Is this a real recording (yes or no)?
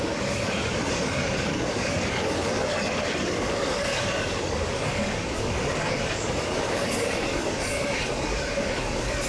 no